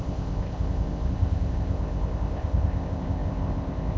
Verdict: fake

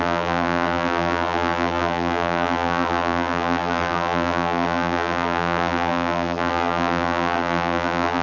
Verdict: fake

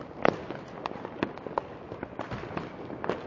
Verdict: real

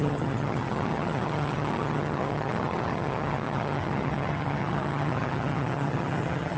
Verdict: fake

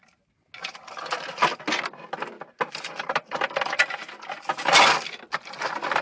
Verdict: real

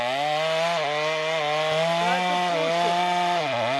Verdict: real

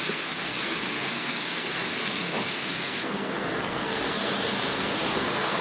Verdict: fake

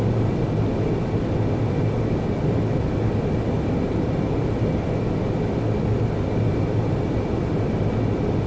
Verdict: real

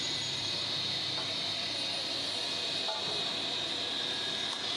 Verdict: real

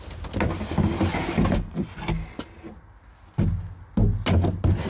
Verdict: real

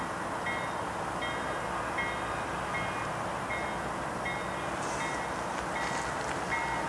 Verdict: real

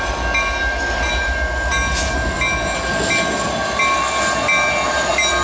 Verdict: real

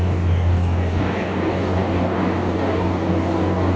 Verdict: fake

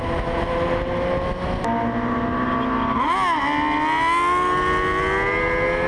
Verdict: real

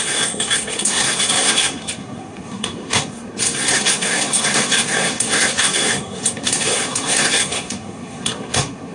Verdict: fake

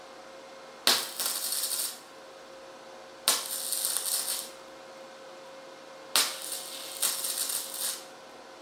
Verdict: real